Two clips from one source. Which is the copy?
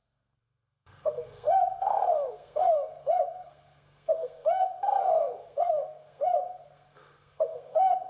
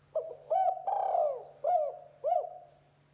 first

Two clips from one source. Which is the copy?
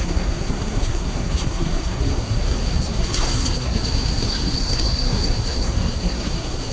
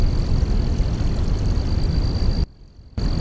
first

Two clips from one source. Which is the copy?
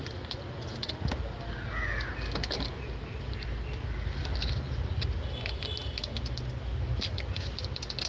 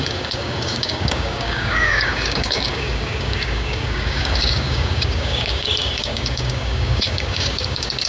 second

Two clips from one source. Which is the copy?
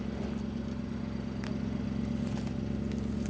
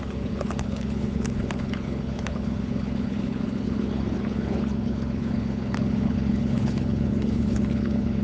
second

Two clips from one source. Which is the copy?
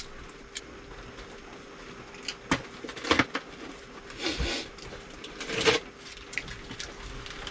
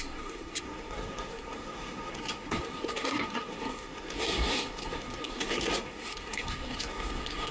second